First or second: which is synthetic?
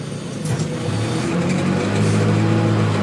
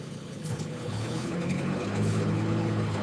second